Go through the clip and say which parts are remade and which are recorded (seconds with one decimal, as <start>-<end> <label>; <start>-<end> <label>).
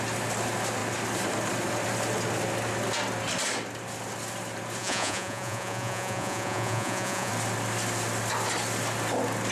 0.0-4.8 recorded; 4.8-7.3 remade; 7.3-9.5 recorded